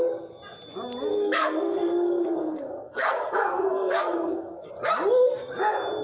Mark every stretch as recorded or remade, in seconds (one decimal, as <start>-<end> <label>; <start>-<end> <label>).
0.0-1.1 recorded; 1.1-4.7 remade; 4.7-6.0 recorded